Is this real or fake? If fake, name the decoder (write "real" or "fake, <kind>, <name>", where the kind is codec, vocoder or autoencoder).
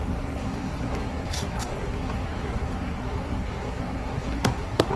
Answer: fake, codec, SNAC